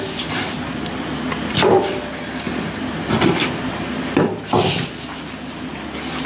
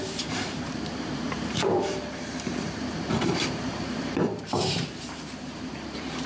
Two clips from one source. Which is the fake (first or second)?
second